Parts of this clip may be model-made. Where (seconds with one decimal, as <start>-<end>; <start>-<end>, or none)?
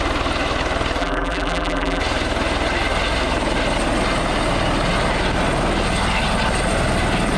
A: 1.0-2.0